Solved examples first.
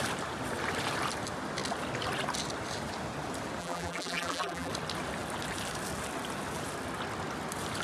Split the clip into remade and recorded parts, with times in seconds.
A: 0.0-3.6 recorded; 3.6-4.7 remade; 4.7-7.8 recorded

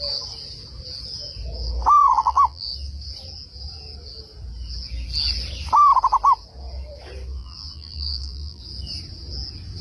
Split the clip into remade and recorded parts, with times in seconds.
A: 0.0-2.0 recorded; 2.0-2.7 remade; 2.7-7.4 recorded; 7.4-8.6 remade; 8.6-9.8 recorded